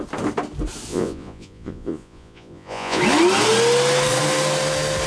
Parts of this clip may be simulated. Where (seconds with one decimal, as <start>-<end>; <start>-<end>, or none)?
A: 0.9-3.0